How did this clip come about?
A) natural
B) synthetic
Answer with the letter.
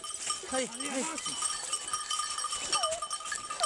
A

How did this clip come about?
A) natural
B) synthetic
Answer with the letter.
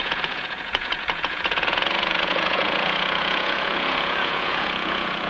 B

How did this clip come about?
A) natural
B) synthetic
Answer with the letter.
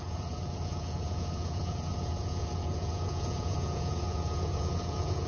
B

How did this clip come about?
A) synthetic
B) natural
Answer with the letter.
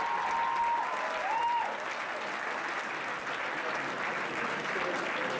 B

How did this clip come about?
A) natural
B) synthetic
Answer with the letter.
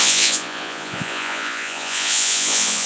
B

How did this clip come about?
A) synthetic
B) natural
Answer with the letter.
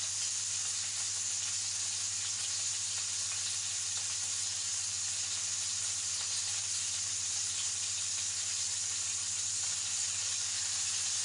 B